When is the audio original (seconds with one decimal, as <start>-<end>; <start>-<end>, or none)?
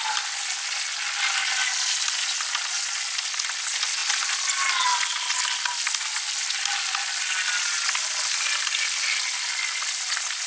0.0-10.5